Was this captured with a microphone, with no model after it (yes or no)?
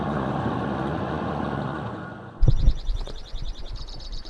no